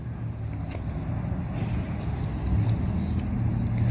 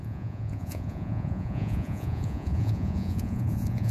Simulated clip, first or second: second